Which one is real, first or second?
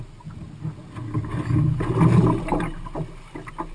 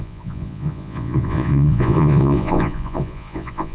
first